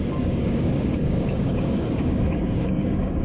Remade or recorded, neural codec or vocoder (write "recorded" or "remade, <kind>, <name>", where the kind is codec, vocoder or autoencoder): remade, codec, DAC